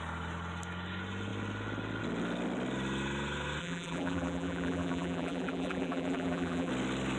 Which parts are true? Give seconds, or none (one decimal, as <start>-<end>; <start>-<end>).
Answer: 0.0-3.6; 6.7-7.2